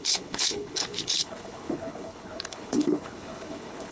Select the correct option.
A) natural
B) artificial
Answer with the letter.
B